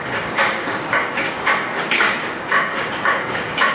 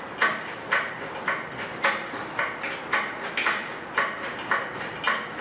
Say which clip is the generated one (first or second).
first